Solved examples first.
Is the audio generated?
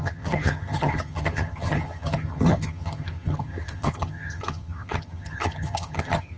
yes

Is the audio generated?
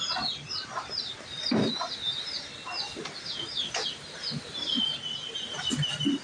no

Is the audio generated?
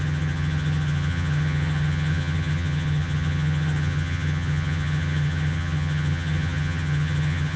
yes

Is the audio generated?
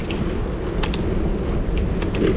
no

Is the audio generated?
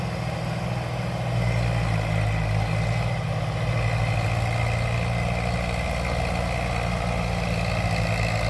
no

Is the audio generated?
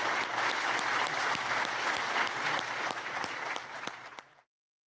no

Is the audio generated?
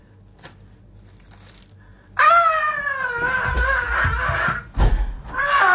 no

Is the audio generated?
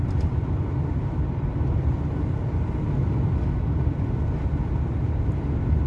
no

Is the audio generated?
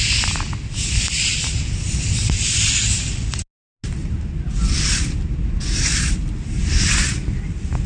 no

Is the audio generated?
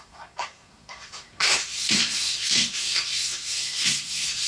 yes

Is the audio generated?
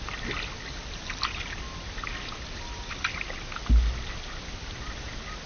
no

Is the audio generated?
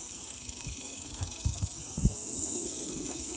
yes